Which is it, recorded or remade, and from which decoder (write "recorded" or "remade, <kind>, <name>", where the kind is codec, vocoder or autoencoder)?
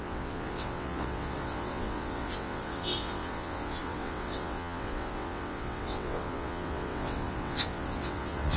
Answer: remade, vocoder, WaveNeXt